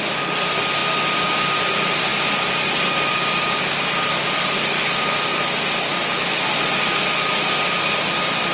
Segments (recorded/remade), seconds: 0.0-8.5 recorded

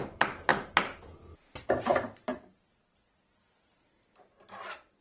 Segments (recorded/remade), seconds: 0.0-1.9 recorded; 1.9-5.0 remade